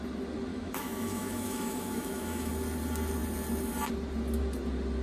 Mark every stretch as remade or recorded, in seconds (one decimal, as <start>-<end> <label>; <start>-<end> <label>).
0.0-0.5 recorded; 0.5-2.5 remade; 2.5-5.0 recorded